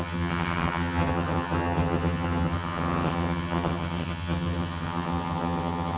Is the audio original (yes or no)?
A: no